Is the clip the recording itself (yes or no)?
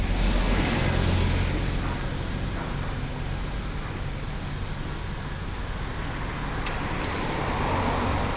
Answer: yes